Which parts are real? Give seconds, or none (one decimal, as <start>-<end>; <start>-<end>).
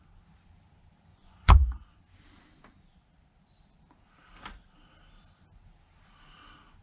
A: 0.0-1.1; 2.0-6.8